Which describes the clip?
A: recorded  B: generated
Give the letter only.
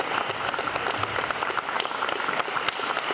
A